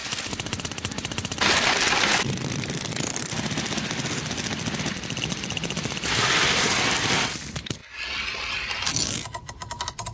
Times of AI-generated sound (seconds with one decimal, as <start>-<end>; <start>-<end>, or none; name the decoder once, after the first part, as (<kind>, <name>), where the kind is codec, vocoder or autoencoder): 2.1-3.2 (vocoder, BigVGAN v2)